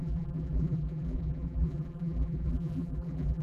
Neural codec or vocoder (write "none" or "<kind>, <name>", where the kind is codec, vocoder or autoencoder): vocoder, BigVGAN v2